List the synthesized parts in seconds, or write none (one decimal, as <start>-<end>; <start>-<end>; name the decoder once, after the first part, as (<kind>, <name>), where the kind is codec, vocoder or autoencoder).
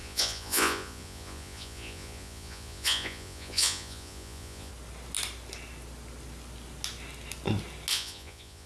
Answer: 0.0-4.7 (vocoder, Vocos); 7.9-8.7